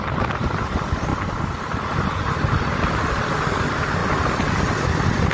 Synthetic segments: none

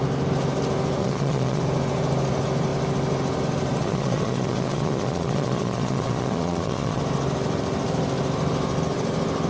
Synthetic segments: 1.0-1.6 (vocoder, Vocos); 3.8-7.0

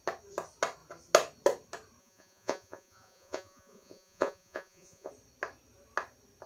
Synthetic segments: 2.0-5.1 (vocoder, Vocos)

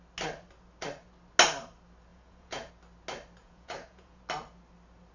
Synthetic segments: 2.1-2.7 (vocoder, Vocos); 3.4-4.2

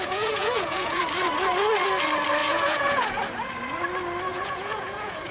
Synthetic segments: 0.0-1.0 (vocoder, Vocos); 2.4-3.2; 4.3-5.3